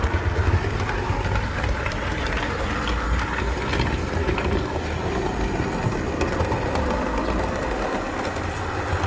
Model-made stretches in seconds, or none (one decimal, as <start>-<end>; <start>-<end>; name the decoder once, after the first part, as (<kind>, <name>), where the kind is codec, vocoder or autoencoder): 4.2-4.8 (codec, DAC)